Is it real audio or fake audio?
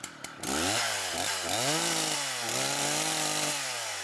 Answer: real